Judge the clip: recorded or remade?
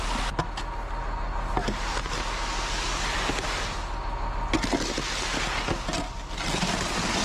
recorded